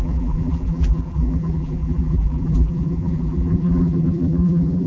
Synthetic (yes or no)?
yes